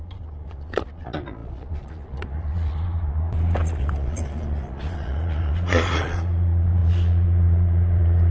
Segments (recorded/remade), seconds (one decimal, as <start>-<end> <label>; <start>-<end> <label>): 0.0-8.3 remade